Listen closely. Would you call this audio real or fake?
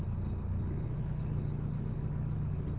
real